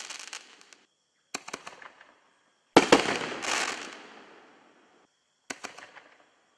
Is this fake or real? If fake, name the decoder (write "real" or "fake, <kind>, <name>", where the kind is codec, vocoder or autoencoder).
real